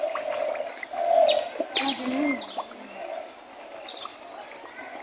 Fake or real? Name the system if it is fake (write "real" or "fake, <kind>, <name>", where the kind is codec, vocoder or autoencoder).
real